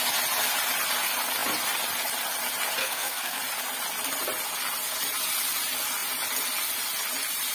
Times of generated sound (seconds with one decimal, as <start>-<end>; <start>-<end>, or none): 2.8-3.4